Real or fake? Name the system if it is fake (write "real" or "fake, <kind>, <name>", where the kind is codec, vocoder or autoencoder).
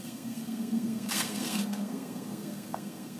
fake, codec, SNAC